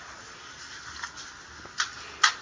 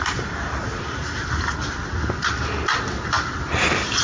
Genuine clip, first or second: first